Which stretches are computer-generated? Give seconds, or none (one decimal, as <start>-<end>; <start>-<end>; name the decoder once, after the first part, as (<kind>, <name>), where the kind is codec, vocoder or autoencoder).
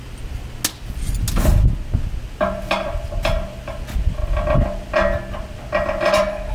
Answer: none